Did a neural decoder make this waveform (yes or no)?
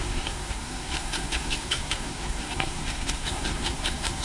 yes